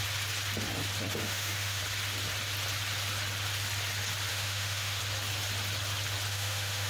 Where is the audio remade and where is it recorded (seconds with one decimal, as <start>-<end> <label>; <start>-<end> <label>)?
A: 0.0-1.2 recorded; 1.2-1.8 remade; 1.8-4.3 recorded; 4.3-5.0 remade; 5.0-6.3 recorded; 6.3-6.9 remade